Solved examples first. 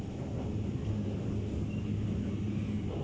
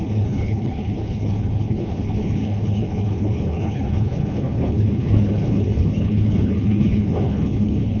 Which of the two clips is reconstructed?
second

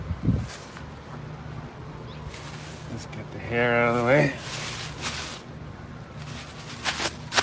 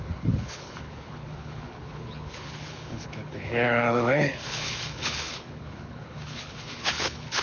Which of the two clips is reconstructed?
second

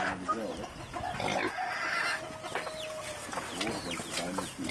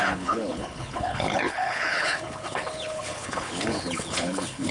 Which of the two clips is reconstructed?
second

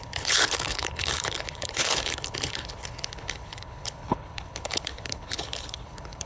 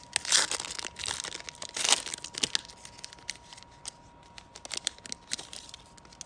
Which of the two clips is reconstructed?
first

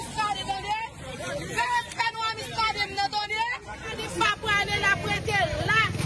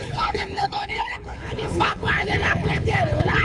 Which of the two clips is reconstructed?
second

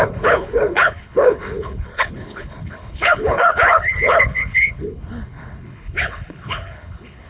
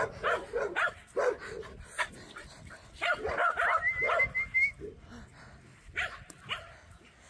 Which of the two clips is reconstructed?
first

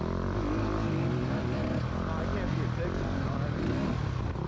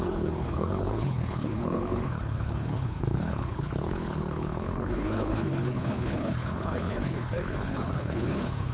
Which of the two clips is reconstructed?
second